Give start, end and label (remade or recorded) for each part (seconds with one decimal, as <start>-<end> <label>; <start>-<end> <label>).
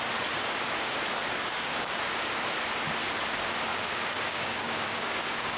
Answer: 0.0-1.2 recorded; 1.2-2.0 remade; 2.0-3.7 recorded; 3.7-5.6 remade